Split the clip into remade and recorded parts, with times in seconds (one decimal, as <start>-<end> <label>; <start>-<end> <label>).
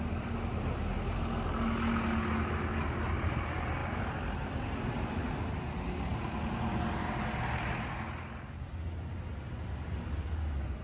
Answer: 0.0-10.8 recorded